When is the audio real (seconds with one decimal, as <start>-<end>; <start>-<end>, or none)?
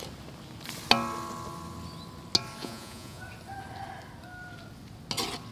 0.0-2.6; 3.2-5.5